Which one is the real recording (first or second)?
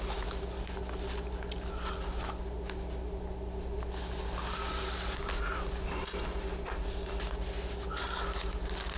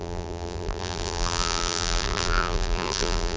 first